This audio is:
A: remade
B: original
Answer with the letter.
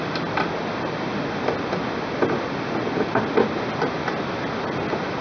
B